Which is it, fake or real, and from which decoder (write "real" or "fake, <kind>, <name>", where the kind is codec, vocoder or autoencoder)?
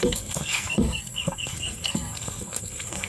fake, codec, SNAC